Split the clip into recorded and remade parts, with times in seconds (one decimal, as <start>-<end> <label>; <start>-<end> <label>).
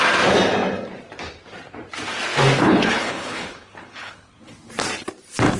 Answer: 0.0-2.6 recorded; 2.6-4.7 remade; 4.7-5.6 recorded